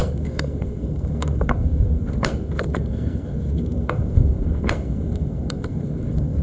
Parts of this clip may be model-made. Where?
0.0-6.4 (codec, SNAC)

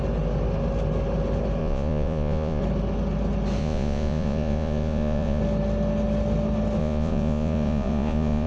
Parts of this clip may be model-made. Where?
1.6-2.6 (vocoder, Vocos); 3.6-5.4; 6.8-8.5

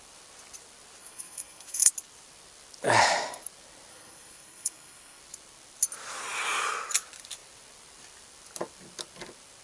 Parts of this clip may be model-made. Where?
1.0-1.9 (codec, SNAC); 3.9-5.2

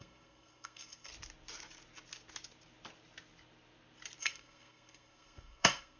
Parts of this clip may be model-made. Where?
0.0-1.1 (codec, SNAC); 4.2-6.0